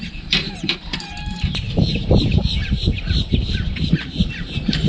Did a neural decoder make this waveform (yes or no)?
yes